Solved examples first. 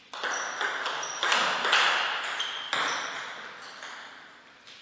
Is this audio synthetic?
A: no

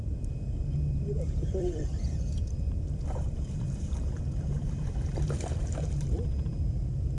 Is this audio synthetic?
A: yes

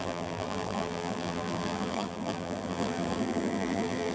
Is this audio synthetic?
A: yes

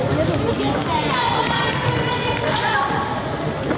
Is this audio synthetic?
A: no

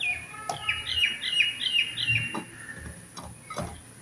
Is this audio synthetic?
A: no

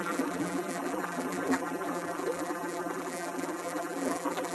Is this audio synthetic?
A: yes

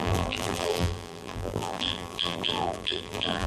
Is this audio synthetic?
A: yes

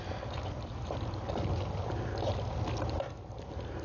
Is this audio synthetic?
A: no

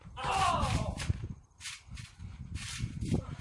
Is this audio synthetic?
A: yes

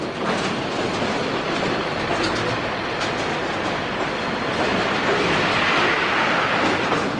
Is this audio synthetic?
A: no